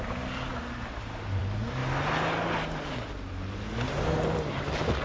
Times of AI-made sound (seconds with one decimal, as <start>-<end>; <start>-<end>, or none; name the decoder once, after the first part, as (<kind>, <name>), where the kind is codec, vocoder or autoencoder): none